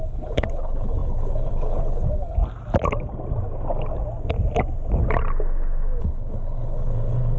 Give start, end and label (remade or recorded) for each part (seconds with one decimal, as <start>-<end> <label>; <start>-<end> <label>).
0.0-2.4 remade; 2.4-6.0 recorded; 6.0-7.4 remade